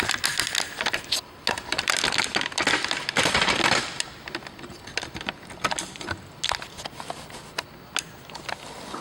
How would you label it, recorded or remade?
recorded